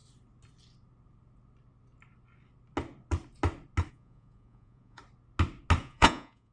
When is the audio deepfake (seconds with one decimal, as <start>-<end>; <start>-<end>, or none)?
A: 3.9-5.0; 5.8-6.5